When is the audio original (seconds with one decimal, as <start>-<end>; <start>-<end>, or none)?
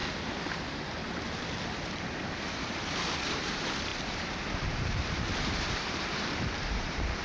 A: 0.0-1.9